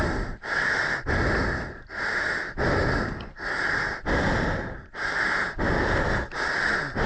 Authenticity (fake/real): real